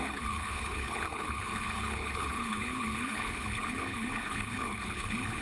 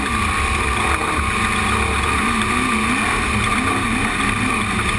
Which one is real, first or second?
second